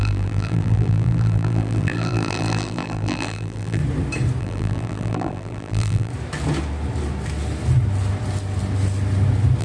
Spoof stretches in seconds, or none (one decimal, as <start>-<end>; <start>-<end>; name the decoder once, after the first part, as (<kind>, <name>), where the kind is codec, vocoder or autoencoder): 0.0-3.8 (vocoder, BigVGAN v2); 4.4-6.1